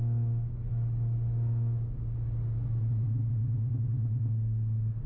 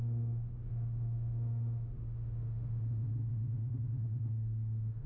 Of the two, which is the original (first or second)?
first